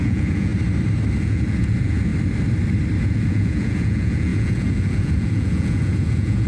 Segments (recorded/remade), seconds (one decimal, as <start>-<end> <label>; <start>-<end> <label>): 0.0-0.5 remade; 0.5-1.2 recorded; 1.2-2.1 remade; 2.1-3.0 recorded; 3.0-6.5 remade